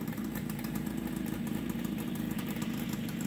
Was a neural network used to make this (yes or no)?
yes